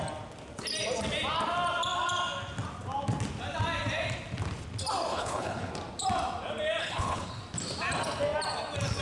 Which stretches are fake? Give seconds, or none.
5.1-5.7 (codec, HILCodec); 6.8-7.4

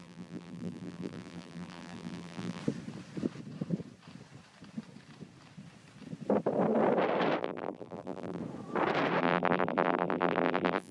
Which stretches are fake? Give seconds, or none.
0.0-2.6 (vocoder, BigVGAN v2); 7.4-8.4; 9.2-10.9